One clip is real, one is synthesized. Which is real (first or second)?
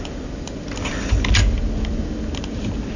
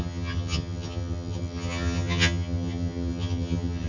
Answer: first